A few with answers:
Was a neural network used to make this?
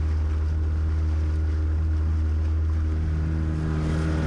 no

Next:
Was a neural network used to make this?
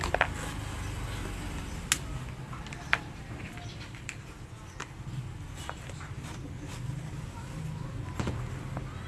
no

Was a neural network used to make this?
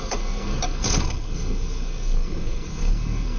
yes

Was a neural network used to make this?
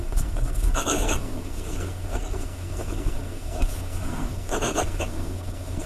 yes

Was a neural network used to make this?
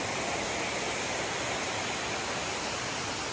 no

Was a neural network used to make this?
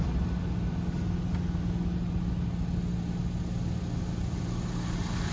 no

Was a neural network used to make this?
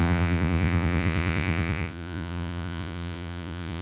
yes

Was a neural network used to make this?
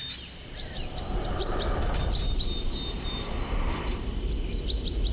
no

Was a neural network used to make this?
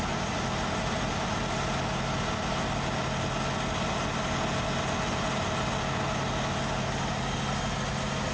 no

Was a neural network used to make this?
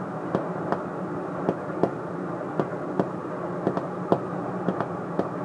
no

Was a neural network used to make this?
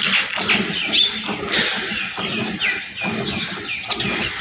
no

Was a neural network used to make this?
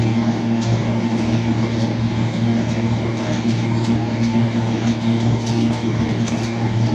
yes